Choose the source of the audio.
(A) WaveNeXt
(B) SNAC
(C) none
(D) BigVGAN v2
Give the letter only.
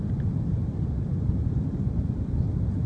C